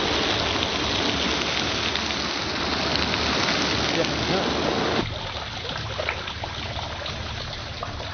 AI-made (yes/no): no